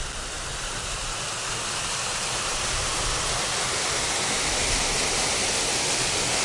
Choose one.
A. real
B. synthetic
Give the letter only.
A